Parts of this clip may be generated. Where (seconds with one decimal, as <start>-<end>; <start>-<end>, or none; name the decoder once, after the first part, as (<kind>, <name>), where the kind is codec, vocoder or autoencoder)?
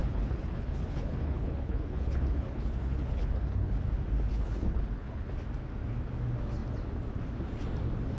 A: 0.0-3.7 (codec, HILCodec); 4.3-5.3